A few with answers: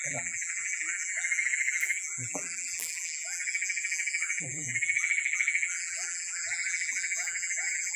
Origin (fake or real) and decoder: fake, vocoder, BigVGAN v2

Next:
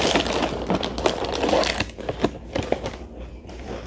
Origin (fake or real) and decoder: fake, vocoder, BigVGAN v2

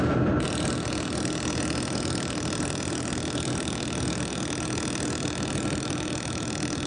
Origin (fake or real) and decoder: real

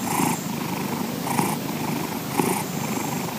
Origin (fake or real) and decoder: real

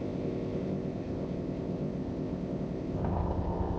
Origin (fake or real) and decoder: fake, codec, ZipCodec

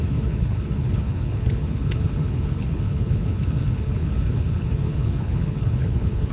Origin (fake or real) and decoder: fake, codec, HILCodec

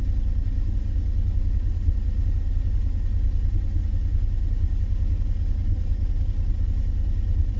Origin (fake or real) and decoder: real